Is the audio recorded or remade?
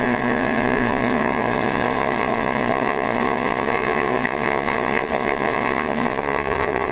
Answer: remade